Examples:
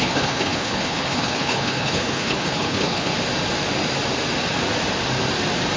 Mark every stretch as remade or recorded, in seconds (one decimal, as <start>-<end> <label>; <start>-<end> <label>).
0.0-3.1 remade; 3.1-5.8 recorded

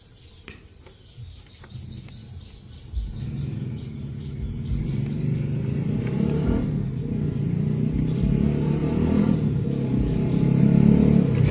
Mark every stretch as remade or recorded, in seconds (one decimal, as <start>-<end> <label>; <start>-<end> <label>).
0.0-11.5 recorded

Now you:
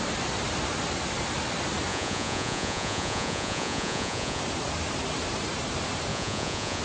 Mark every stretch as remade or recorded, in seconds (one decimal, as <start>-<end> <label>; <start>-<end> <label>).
0.0-1.9 recorded; 1.9-4.4 remade; 4.4-6.1 recorded; 6.1-6.8 remade

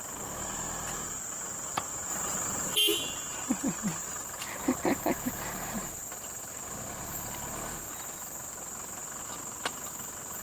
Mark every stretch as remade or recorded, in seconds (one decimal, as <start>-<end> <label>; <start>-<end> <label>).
0.0-2.1 recorded; 2.1-2.8 remade; 2.8-4.0 recorded; 4.0-6.5 remade; 6.5-10.4 recorded

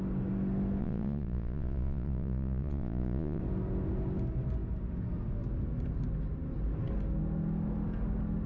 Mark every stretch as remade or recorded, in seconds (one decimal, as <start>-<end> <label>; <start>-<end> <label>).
0.0-0.8 recorded; 0.8-3.4 remade; 3.4-8.5 recorded

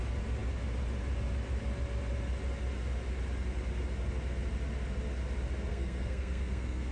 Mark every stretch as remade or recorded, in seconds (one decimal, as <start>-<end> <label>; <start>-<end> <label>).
0.0-5.7 recorded; 5.7-6.9 remade